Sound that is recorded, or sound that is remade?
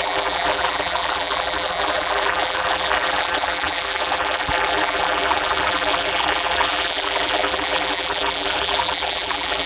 remade